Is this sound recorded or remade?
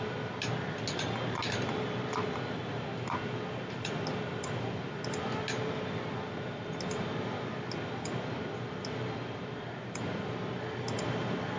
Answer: recorded